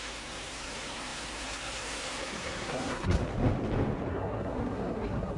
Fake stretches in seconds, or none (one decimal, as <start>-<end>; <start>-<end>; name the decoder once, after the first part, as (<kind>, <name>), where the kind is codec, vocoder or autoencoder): 0.0-3.2 (codec, SNAC); 4.1-5.4

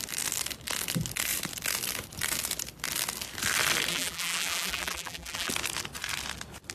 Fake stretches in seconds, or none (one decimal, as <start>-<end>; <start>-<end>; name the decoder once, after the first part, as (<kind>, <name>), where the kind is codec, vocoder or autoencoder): 3.9-5.5 (vocoder, BigVGAN v2)

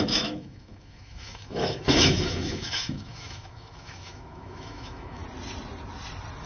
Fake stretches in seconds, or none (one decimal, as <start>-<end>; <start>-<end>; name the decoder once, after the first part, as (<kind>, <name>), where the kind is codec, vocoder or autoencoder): 0.0-5.2 (autoencoder, DAC-VAE)

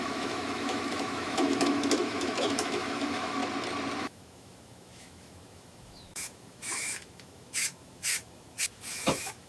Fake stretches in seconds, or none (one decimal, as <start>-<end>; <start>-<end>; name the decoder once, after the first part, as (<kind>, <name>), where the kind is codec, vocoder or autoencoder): 0.0-3.4 (autoencoder, DAC-VAE); 4.0-9.5

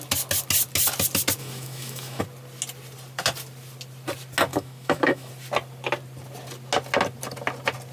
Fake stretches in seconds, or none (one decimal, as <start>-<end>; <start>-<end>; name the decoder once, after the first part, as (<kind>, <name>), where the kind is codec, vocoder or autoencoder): 1.4-2.2 (autoencoder, DAC-VAE); 4.5-5.3